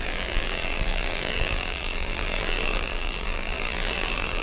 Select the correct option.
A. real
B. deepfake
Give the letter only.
B